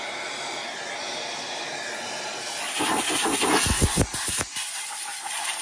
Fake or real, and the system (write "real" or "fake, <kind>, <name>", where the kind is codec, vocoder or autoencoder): real